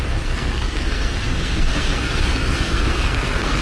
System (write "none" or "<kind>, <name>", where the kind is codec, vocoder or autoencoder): codec, SNAC